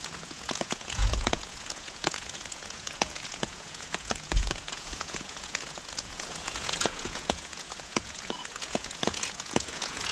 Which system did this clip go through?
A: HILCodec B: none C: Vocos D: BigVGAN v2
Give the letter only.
C